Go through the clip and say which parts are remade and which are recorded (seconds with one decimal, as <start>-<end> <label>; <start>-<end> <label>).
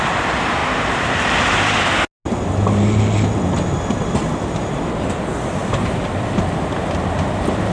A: 0.0-7.7 recorded